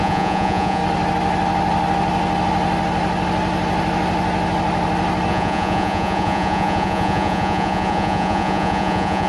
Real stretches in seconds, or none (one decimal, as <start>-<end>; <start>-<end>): 0.8-5.3